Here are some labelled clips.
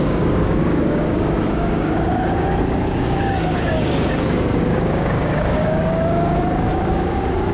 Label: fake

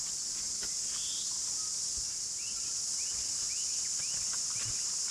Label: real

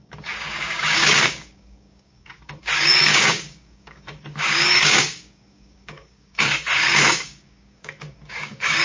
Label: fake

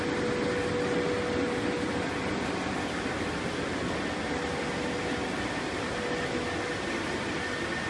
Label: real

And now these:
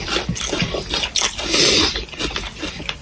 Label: real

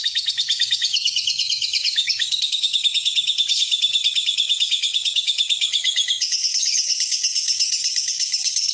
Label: fake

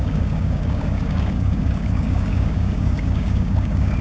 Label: fake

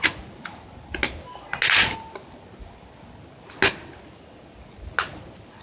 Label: real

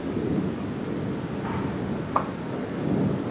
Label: real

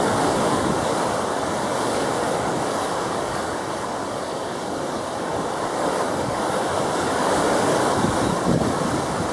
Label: fake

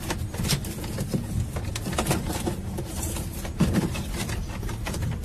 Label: real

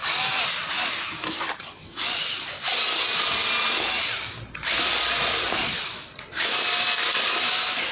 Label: real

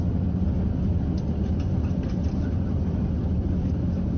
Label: real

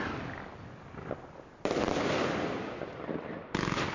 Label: real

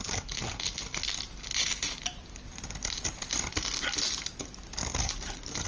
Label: real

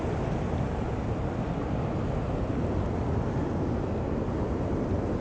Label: real